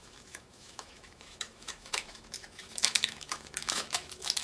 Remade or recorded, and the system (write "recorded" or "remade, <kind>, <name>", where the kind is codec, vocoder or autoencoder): remade, autoencoder, DAC-VAE